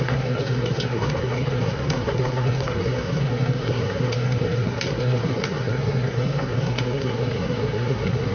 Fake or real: fake